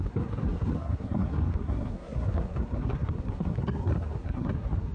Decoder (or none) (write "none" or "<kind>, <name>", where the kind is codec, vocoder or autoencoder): codec, SNAC